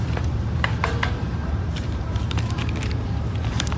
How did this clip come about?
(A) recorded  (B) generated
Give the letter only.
B